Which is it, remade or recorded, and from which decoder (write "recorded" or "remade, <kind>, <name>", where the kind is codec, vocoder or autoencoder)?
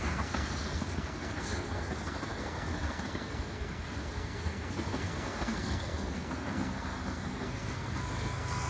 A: remade, codec, SNAC